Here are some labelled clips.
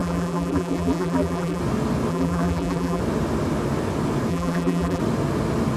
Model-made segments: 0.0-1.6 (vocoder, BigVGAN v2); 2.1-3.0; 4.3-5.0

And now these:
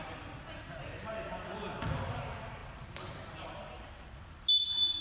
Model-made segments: none

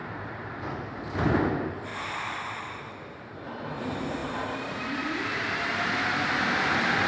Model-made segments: 0.0-1.0 (vocoder, BigVGAN v2); 1.9-2.8; 4.2-5.9

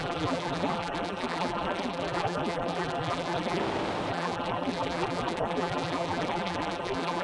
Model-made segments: 0.0-3.6 (vocoder, BigVGAN v2); 4.1-7.2

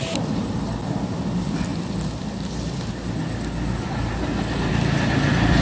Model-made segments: none

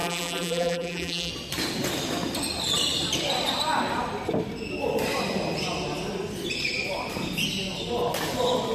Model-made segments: 0.0-1.3 (vocoder, BigVGAN v2)